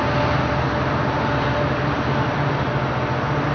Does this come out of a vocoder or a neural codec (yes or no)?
no